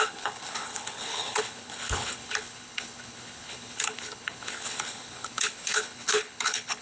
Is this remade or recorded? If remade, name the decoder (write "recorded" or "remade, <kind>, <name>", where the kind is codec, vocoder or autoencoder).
remade, codec, HILCodec